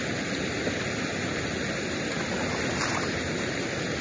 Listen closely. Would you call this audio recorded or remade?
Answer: recorded